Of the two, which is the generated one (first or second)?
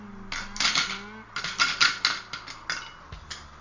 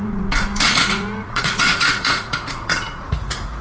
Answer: second